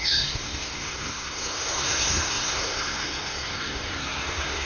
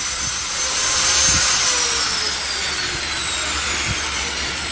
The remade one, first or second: first